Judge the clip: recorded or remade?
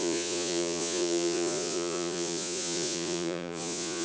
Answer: remade